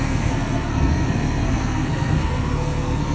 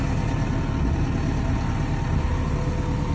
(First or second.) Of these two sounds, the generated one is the first